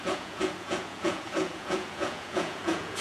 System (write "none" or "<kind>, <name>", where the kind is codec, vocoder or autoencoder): vocoder, Vocos